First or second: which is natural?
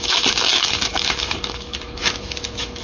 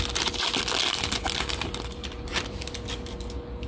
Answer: second